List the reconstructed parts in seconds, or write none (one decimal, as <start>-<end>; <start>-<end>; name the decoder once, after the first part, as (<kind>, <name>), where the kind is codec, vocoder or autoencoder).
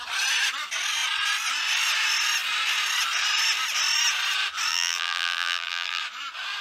4.7-6.0 (vocoder, BigVGAN v2)